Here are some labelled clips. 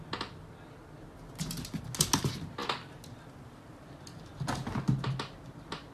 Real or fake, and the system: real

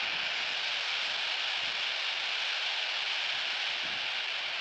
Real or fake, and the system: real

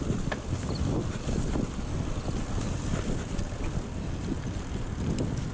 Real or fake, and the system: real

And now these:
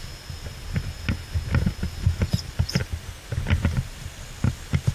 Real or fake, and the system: real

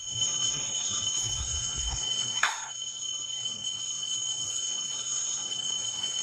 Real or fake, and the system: fake, codec, SNAC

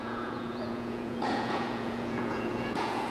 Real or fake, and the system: fake, vocoder, Vocos